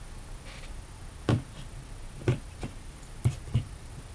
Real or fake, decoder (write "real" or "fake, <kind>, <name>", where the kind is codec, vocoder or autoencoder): fake, vocoder, BigVGAN v2